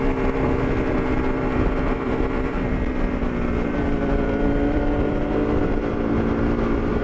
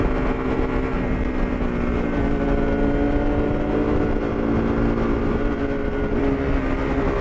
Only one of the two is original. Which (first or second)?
second